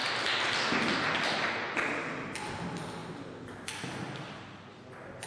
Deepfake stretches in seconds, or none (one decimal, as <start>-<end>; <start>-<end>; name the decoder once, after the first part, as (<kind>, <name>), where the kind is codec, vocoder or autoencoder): none